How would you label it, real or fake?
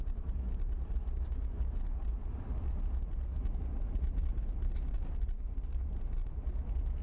real